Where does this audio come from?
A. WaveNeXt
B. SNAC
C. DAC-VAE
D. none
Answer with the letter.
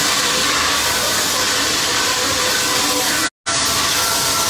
D